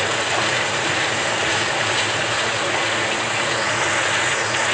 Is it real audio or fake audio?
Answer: fake